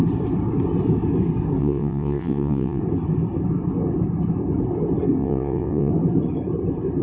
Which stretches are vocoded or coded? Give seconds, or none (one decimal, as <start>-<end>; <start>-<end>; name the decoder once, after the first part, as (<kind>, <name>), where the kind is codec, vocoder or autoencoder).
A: 1.6-2.8 (vocoder, WaveNeXt); 5.2-5.9